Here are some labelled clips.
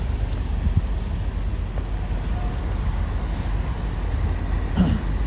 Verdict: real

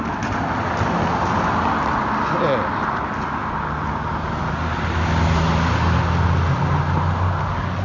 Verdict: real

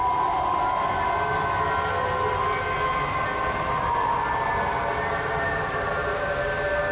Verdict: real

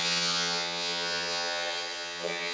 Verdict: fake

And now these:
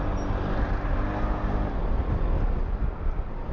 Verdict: real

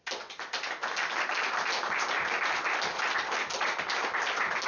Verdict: real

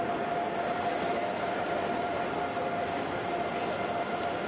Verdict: real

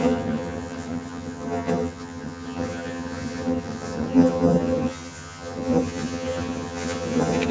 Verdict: fake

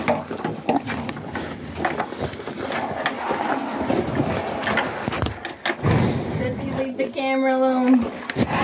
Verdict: real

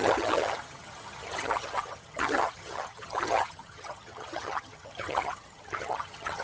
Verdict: fake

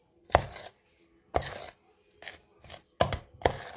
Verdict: real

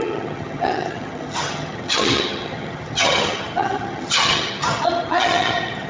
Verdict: fake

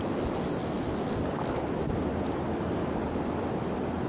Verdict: real